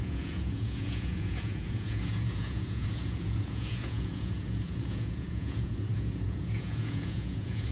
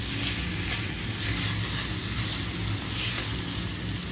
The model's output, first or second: first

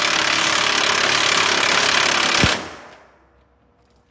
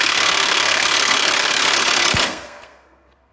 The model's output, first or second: second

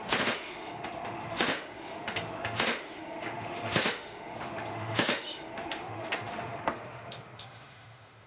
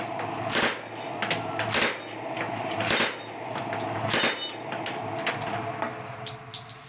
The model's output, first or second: first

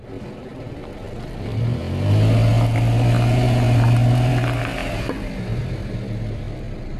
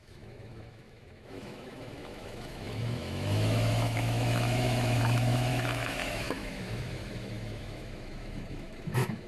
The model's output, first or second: second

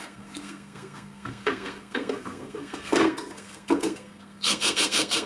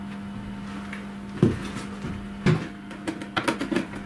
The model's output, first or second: first